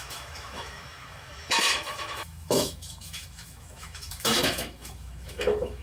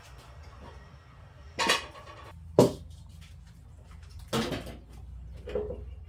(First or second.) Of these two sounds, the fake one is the first